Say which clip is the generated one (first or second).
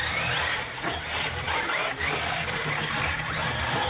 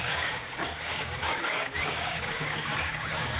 second